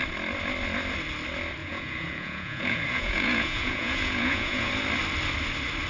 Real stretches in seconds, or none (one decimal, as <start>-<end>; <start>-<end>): 0.0-1.6; 4.7-5.9